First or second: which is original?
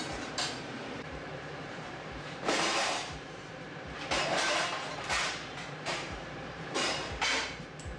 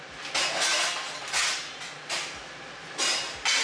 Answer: second